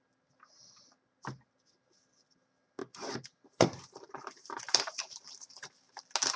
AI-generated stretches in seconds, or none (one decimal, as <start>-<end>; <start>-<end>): 2.8-6.0